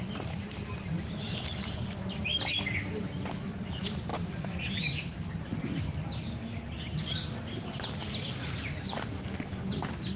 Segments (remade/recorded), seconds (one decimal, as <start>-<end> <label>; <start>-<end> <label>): 0.0-10.2 recorded